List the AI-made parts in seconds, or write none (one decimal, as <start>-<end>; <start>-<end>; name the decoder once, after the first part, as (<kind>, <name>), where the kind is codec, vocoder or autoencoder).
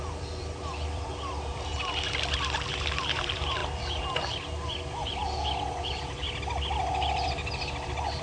0.0-1.7 (vocoder, BigVGAN v2); 3.0-3.6; 4.8-5.2; 6.7-7.4